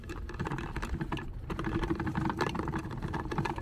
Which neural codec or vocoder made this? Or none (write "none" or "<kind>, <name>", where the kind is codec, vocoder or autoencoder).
none